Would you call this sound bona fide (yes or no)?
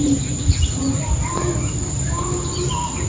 no